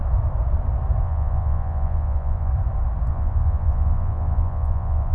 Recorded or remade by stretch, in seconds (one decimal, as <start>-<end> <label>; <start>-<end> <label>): 0.0-1.0 recorded; 1.0-2.5 remade; 2.5-3.1 recorded; 3.1-5.1 remade